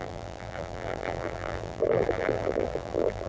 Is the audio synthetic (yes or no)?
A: yes